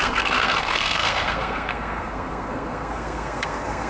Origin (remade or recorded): remade